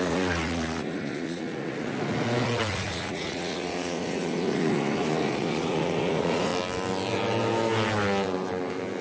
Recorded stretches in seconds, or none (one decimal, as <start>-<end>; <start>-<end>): 6.5-9.0